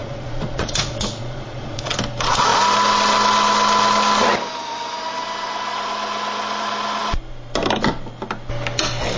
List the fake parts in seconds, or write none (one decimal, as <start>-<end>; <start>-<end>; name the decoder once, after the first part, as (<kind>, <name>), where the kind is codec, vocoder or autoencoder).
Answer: 0.0-2.0 (vocoder, Vocos)